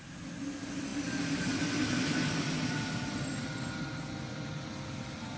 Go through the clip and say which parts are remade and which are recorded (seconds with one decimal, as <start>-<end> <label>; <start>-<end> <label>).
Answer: 0.0-5.4 recorded